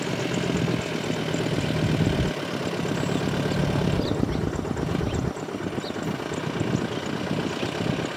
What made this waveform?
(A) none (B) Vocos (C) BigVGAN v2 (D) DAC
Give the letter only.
A